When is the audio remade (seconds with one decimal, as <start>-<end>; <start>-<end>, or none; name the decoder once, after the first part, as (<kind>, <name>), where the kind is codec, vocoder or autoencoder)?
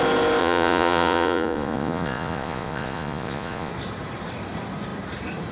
0.4-3.7 (vocoder, Vocos)